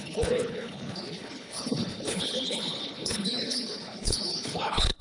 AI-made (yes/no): yes